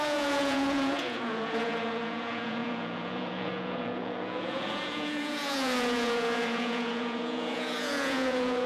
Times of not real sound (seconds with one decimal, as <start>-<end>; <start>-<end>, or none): 0.0-8.7